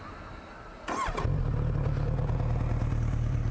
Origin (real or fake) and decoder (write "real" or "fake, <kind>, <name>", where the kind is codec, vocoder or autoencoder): real